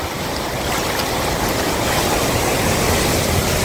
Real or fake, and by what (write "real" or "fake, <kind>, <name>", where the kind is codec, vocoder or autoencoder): real